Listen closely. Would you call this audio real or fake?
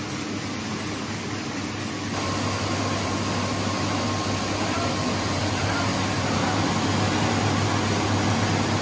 real